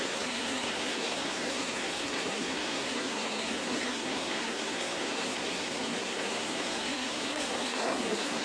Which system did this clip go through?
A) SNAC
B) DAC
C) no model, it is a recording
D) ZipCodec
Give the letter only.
A